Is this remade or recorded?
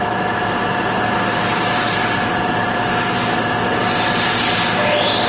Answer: recorded